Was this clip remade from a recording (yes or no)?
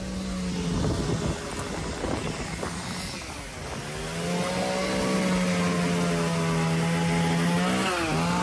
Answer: no